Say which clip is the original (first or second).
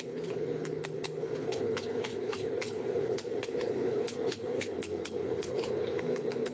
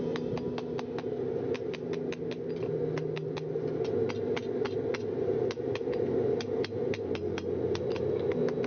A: second